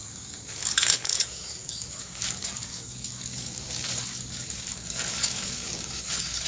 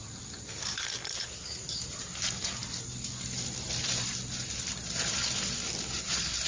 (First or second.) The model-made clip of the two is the first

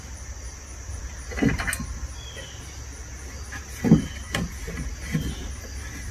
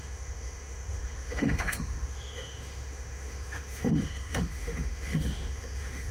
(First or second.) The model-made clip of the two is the second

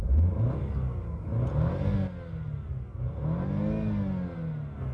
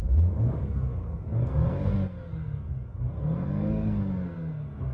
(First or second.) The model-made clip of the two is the second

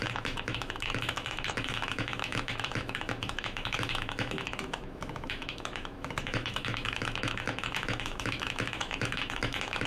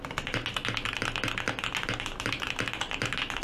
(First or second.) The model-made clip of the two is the first